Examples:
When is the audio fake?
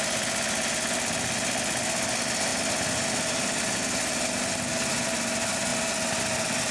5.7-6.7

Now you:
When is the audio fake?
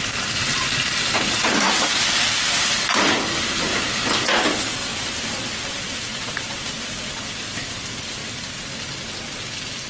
none